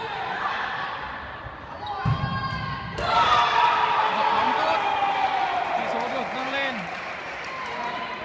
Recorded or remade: recorded